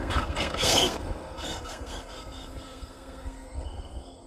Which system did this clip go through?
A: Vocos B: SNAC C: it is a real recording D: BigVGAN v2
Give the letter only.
B